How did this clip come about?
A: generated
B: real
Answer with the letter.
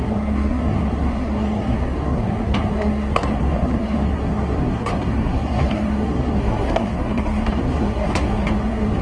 A